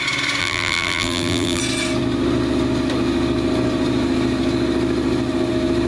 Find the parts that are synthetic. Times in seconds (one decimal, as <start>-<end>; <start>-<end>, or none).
0.4-1.6